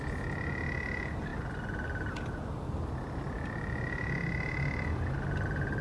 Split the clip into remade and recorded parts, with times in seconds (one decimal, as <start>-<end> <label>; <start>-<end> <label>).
0.0-5.8 recorded